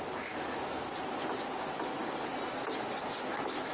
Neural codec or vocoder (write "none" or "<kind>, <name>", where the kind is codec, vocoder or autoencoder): none